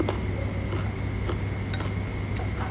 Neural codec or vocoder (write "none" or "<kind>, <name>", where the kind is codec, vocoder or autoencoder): none